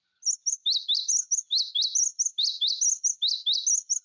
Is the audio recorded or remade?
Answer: recorded